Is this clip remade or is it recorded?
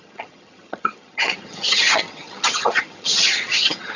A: remade